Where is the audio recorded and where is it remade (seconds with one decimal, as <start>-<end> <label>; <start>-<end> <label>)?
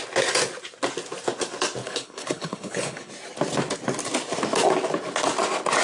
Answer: 0.0-1.8 recorded; 1.8-3.1 remade; 3.1-5.8 recorded